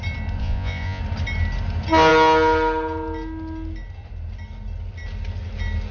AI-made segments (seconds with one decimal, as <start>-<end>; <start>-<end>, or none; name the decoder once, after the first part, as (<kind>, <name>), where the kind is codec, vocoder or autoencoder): 0.4-1.0 (vocoder, Vocos)